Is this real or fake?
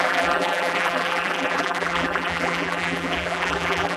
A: fake